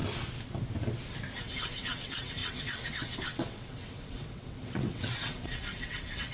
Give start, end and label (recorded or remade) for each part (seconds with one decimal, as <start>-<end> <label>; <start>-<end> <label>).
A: 0.0-1.4 recorded; 1.4-6.3 remade